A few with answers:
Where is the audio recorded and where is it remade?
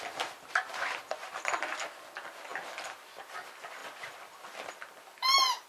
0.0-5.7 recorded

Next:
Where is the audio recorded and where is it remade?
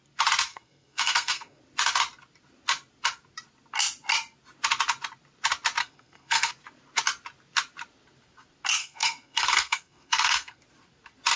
0.0-0.5 recorded; 0.5-1.6 remade; 1.6-5.8 recorded; 5.8-6.5 remade; 6.5-8.8 recorded; 8.8-10.6 remade; 10.6-11.4 recorded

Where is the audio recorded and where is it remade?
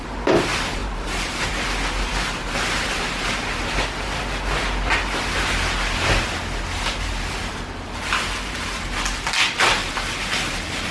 0.0-0.8 recorded; 0.8-1.5 remade; 1.5-9.8 recorded; 9.8-10.9 remade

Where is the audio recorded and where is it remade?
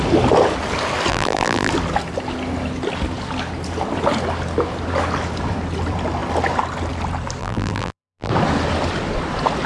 0.0-1.1 recorded; 1.1-1.7 remade; 1.7-7.4 recorded; 7.4-8.3 remade; 8.3-9.7 recorded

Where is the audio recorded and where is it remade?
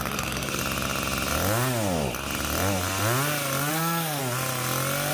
0.0-0.6 remade; 0.6-3.7 recorded; 3.7-4.2 remade; 4.2-5.1 recorded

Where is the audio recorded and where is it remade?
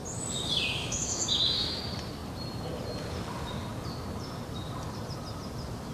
0.0-0.8 recorded; 0.8-1.8 remade; 1.8-5.9 recorded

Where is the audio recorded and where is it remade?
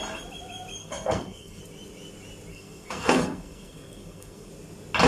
0.0-0.8 recorded; 0.8-1.6 remade; 1.6-2.5 recorded; 2.5-4.5 remade; 4.5-5.1 recorded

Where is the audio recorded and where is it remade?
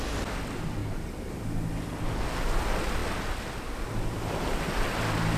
0.0-0.8 recorded; 0.8-1.3 remade; 1.3-5.4 recorded